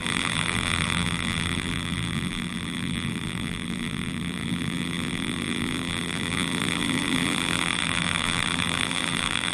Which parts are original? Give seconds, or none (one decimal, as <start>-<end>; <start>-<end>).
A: none